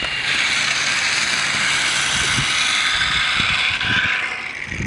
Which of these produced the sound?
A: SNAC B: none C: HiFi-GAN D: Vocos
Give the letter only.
B